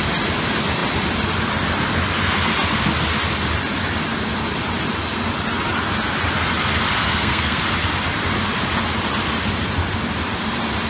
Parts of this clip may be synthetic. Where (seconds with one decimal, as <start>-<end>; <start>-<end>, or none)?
7.0-7.6